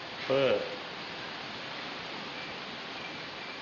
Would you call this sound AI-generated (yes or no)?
no